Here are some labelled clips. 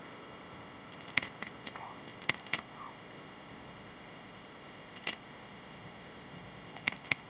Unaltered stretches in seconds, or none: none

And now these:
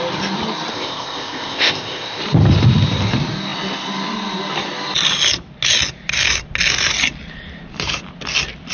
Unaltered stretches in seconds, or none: 0.0-0.7; 2.2-8.7